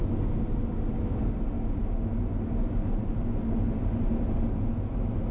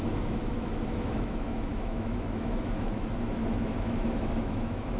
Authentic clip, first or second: first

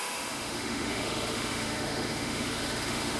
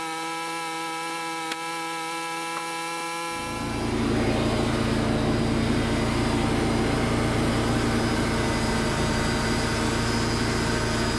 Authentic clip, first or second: second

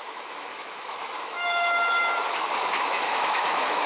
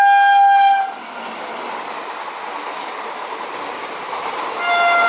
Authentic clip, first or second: second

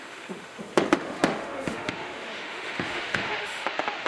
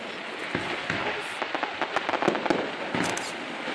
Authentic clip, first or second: second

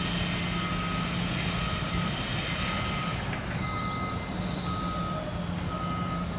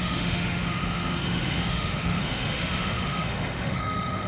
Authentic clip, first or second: first